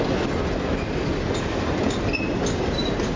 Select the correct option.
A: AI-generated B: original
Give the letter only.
B